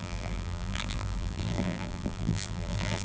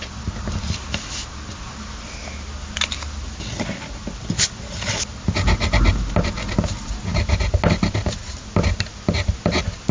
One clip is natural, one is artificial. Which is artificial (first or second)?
first